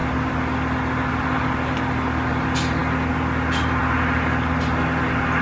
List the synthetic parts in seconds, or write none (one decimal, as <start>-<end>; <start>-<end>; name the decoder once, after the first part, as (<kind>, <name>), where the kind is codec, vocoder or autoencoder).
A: none